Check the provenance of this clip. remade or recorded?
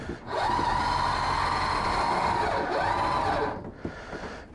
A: recorded